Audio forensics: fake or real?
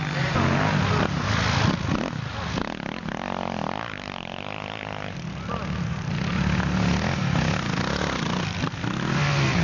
real